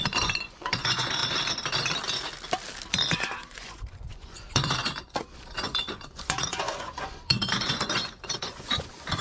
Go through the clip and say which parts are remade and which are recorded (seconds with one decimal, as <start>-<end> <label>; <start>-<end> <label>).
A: 0.0-1.2 remade; 1.2-3.1 recorded; 3.1-9.2 remade